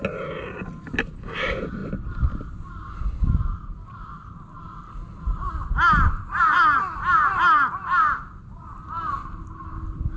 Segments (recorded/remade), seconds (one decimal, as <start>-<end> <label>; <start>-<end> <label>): 0.0-10.2 recorded